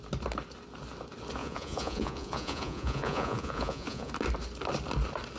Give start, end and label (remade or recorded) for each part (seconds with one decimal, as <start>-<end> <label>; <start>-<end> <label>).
0.0-1.4 recorded; 1.4-4.1 remade; 4.1-5.4 recorded